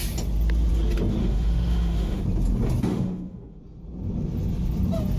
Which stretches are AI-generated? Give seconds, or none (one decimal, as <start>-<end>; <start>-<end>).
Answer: 1.2-2.2; 2.9-3.6